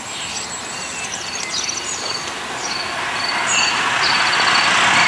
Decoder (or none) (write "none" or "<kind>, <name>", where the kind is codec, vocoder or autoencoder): none